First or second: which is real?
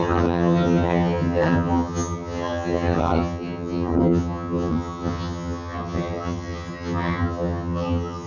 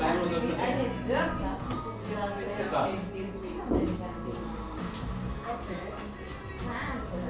second